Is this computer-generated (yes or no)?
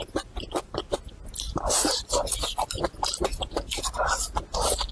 no